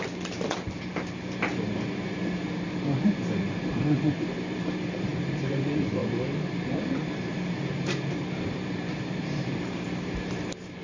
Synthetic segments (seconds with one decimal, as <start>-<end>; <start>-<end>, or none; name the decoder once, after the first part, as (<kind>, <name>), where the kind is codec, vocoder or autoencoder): 0.0-10.8 (vocoder, BigVGAN v2)